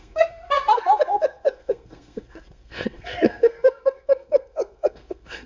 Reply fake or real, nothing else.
fake